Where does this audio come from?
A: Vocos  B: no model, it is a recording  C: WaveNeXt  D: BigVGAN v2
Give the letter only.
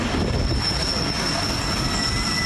B